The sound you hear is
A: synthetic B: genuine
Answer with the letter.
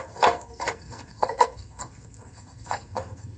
A